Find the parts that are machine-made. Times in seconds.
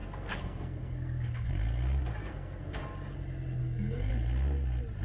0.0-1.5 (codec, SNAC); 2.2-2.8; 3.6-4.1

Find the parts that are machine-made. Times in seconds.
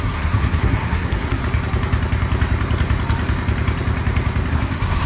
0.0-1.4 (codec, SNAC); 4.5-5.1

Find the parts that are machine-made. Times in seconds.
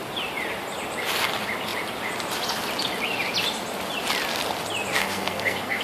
4.9-5.8 (codec, SNAC)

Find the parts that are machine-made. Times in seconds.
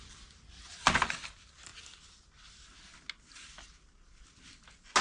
none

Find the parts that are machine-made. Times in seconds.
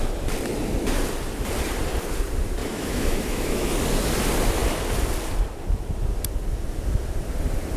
2.6-3.7 (autoencoder, DAC-VAE)